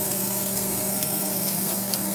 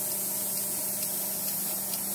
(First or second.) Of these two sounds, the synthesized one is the first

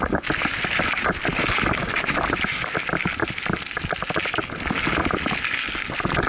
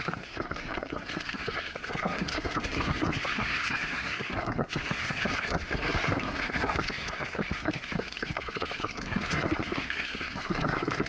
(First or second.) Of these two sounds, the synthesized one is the second